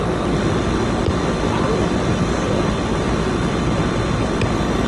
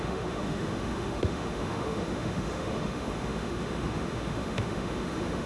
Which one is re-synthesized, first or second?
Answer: second